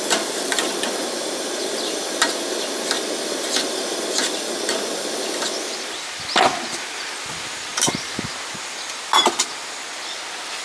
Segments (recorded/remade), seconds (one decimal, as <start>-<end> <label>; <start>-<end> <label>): 0.0-10.6 recorded